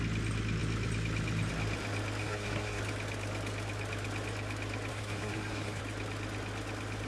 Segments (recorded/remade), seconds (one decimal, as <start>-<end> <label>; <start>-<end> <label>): 0.0-2.2 recorded; 2.2-2.8 remade; 2.8-4.9 recorded; 4.9-5.8 remade; 5.8-7.1 recorded